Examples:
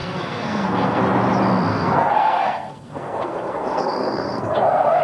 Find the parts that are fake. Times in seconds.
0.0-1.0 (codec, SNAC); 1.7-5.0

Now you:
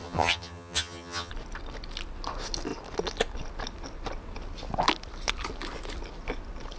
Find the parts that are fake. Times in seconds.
0.0-1.3 (vocoder, HiFi-GAN)

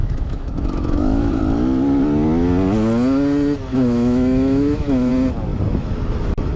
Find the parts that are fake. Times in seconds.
0.0-1.4 (autoencoder, DAC-VAE); 3.7-5.1